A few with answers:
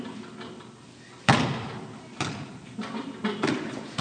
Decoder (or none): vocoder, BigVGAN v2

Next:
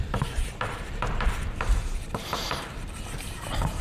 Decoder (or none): vocoder, BigVGAN v2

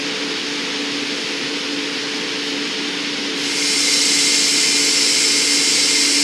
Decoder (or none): none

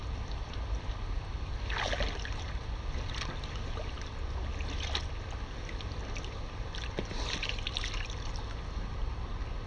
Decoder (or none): none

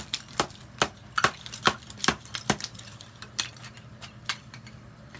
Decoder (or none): vocoder, BigVGAN v2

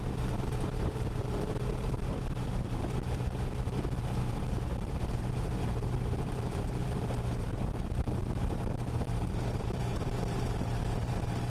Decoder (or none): vocoder, BigVGAN v2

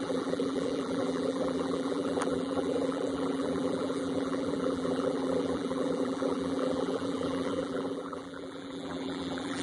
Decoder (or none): vocoder, BigVGAN v2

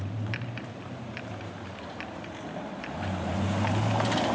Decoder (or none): vocoder, BigVGAN v2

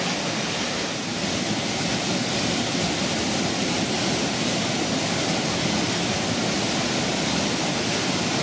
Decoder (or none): none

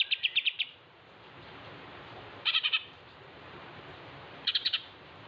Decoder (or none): vocoder, BigVGAN v2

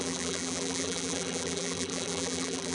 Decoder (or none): vocoder, BigVGAN v2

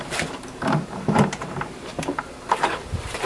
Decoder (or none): vocoder, BigVGAN v2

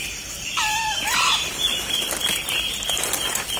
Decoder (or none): none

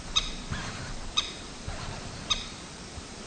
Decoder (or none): vocoder, BigVGAN v2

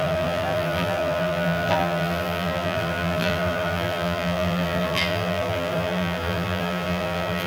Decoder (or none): vocoder, BigVGAN v2